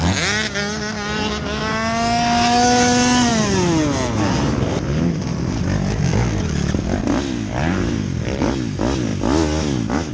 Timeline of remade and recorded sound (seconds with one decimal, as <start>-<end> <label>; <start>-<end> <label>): 0.0-10.1 recorded